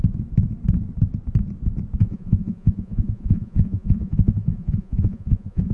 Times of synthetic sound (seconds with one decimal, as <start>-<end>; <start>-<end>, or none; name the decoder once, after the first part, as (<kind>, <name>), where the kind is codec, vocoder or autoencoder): 2.0-5.7 (vocoder, Vocos)